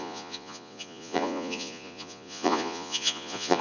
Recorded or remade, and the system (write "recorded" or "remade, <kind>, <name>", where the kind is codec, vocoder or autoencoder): remade, vocoder, Vocos